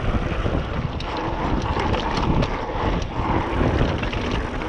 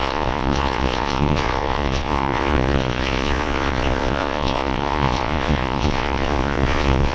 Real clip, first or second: first